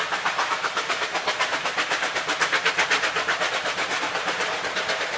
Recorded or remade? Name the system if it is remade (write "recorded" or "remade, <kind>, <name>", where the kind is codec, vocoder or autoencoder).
remade, vocoder, BigVGAN v2